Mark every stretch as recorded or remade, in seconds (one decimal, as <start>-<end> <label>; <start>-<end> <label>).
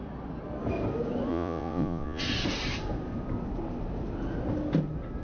0.0-1.3 recorded; 1.3-2.2 remade; 2.2-5.2 recorded